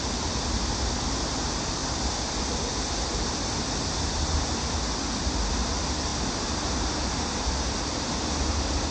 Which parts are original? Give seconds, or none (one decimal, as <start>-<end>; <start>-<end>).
0.0-1.8; 2.4-8.9